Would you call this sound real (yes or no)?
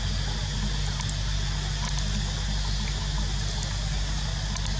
yes